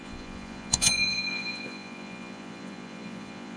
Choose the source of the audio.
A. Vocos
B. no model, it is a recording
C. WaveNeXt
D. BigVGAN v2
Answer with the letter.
A